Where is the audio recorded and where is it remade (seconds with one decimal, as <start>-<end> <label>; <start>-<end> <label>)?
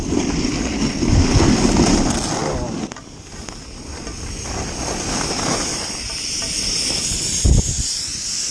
0.0-8.5 recorded